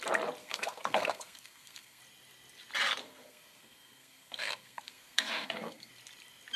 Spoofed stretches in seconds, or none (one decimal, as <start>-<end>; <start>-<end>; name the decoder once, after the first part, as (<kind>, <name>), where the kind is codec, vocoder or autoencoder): 0.4-2.0 (codec, SNAC); 3.0-5.9